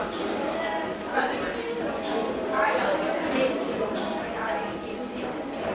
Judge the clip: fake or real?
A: real